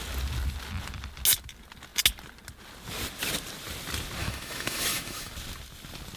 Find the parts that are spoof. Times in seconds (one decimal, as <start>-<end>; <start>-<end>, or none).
4.2-5.3